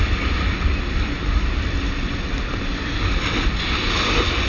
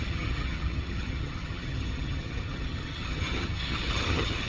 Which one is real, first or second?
first